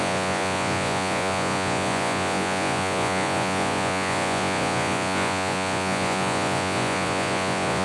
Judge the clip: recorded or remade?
remade